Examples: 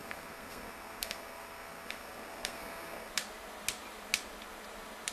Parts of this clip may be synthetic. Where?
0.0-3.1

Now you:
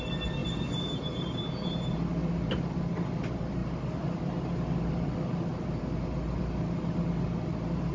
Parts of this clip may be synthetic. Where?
0.4-1.4; 2.2-2.8; 5.5-6.4

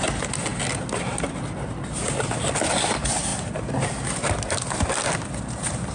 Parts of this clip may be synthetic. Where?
none

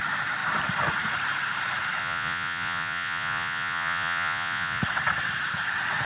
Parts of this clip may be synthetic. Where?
2.0-4.8